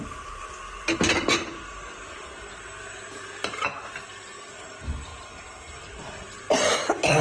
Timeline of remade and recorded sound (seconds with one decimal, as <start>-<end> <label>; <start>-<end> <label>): 0.0-7.2 recorded